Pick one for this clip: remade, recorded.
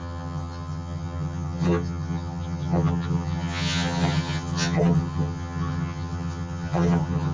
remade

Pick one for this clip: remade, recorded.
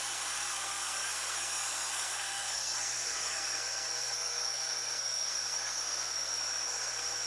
remade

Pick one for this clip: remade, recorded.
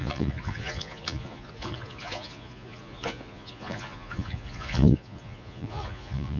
remade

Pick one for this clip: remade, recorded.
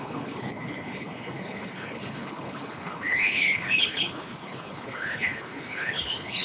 remade